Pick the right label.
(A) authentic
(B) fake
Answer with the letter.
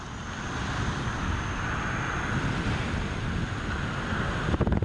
A